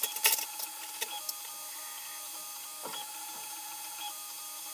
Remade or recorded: recorded